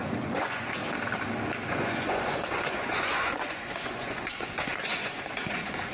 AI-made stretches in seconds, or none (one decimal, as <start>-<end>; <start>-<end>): 0.0-0.8; 1.7-5.9